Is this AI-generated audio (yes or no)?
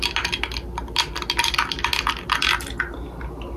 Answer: no